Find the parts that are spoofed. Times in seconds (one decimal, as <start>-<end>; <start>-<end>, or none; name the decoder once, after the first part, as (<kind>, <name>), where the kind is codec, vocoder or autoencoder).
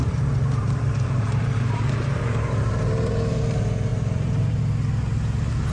0.0-3.4 (vocoder, BigVGAN v2); 3.9-4.6